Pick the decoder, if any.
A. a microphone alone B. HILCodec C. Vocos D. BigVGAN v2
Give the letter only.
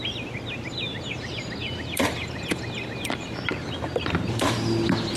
D